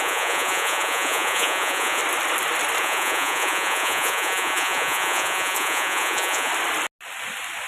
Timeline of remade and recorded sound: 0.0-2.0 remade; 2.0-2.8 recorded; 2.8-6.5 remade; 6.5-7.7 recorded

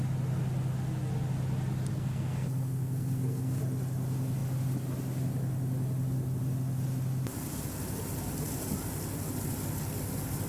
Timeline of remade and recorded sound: 0.0-1.9 recorded; 1.9-3.6 remade; 3.6-10.5 recorded

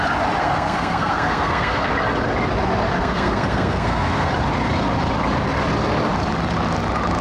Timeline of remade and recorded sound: 0.0-0.4 recorded; 0.4-1.9 remade; 1.9-3.0 recorded; 3.0-4.3 remade; 4.3-7.2 recorded

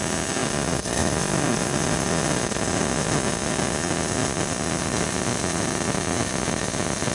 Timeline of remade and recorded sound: 0.0-7.1 recorded